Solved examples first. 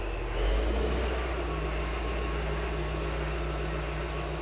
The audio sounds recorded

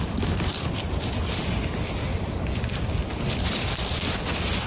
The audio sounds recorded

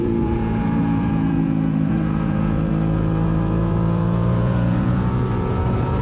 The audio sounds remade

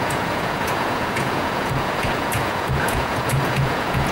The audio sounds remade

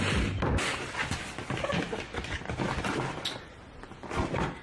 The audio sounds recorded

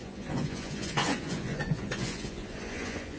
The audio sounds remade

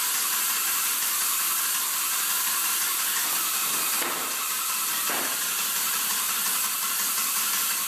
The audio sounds recorded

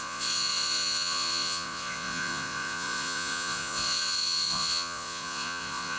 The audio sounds remade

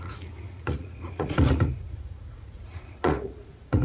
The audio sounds remade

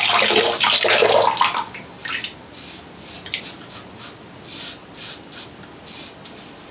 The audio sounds recorded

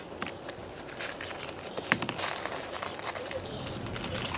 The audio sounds recorded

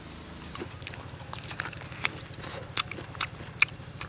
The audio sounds recorded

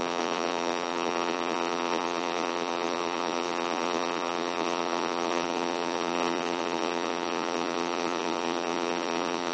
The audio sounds remade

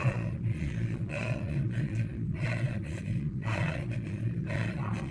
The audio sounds remade